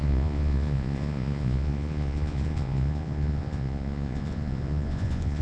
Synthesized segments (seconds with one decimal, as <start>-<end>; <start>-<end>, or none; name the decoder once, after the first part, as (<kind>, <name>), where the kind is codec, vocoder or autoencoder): 0.0-5.4 (vocoder, Vocos)